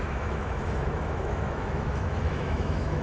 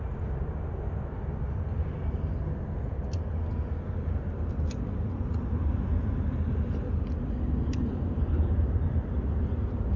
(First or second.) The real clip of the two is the second